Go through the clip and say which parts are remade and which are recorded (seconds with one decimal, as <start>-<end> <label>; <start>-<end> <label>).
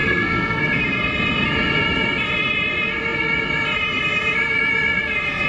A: 0.0-0.6 remade; 0.6-5.5 recorded